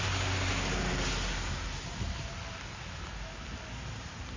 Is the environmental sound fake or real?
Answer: real